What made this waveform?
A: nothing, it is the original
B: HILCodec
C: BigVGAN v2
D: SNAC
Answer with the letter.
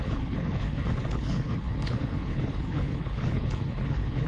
B